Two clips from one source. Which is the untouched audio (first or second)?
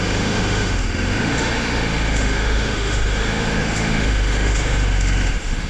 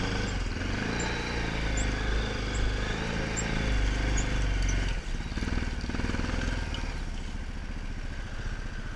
second